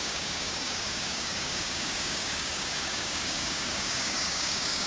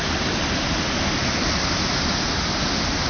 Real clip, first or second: second